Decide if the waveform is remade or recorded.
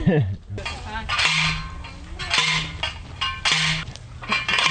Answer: recorded